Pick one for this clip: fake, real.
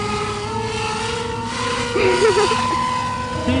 real